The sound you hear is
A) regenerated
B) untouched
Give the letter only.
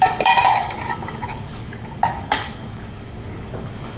A